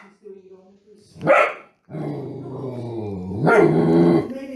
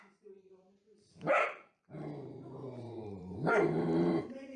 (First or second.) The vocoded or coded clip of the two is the second